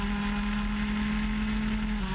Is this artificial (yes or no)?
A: no